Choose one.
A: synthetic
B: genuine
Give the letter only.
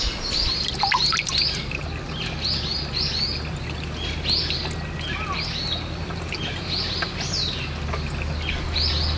B